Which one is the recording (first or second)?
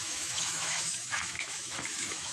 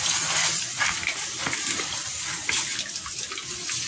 second